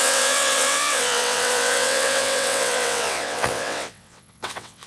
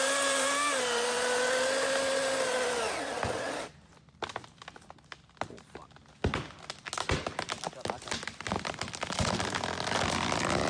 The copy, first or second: first